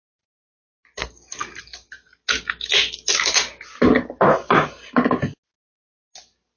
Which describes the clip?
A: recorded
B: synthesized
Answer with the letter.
A